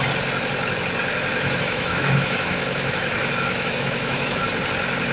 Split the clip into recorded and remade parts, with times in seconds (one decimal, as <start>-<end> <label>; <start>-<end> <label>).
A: 0.0-1.3 recorded; 1.3-4.4 remade; 4.4-5.1 recorded